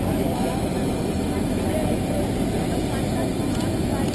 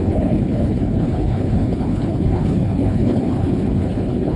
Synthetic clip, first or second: second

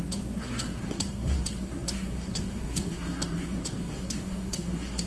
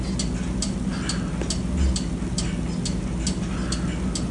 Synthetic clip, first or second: first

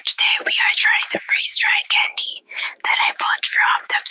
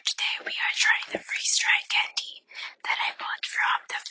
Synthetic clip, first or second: first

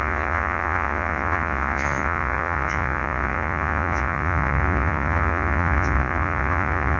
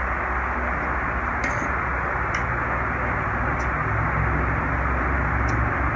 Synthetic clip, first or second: first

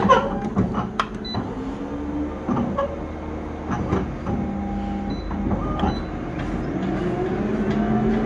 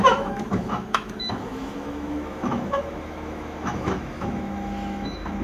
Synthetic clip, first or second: second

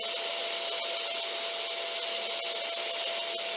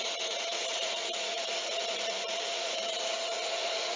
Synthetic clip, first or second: second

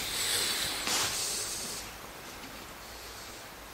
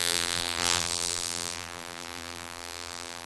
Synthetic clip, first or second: second